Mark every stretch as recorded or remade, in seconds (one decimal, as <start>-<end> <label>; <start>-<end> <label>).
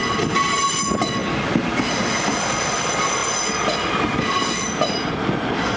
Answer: 0.0-5.8 recorded